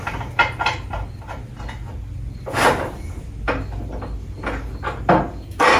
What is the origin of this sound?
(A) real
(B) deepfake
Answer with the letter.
A